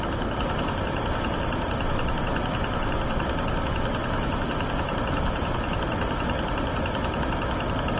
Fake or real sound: real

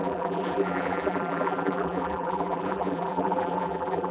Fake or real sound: fake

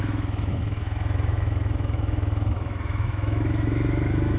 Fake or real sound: fake